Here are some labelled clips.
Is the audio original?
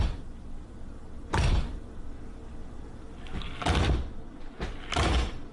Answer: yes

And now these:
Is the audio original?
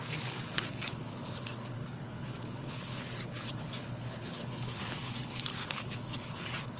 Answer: no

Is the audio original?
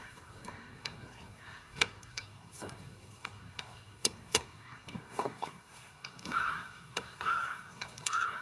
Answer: no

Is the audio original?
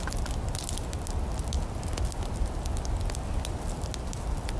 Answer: yes